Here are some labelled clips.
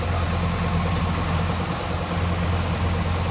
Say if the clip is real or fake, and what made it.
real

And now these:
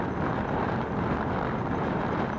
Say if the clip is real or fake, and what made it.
real